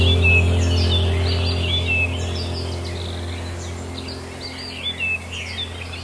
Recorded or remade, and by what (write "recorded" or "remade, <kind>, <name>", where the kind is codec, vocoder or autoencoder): recorded